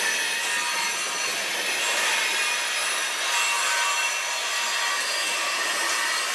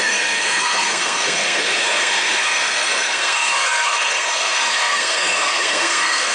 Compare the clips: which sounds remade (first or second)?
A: second